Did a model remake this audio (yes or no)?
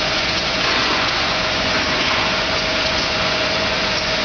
yes